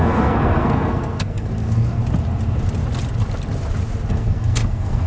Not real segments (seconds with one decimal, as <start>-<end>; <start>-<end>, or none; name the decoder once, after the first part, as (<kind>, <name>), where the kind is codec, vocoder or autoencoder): 0.0-2.0 (codec, SNAC); 4.1-5.1